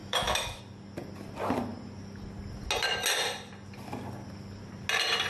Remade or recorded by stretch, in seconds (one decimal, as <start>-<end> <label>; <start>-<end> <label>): 0.0-0.6 remade; 0.6-5.3 recorded